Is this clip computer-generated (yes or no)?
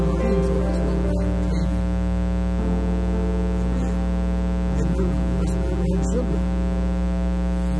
no